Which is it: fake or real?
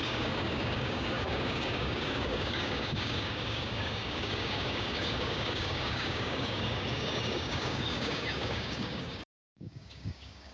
fake